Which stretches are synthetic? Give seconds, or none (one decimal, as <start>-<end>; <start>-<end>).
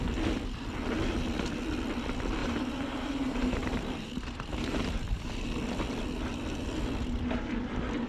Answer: 2.4-5.3